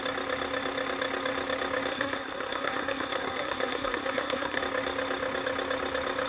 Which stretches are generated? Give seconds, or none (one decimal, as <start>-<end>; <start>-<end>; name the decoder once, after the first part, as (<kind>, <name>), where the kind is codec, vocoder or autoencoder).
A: 1.9-4.6 (codec, SNAC)